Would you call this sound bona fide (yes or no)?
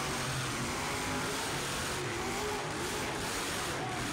yes